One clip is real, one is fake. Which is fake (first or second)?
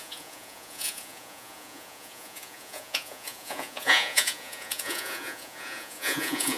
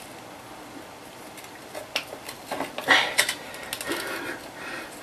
first